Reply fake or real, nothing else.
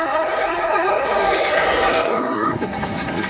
fake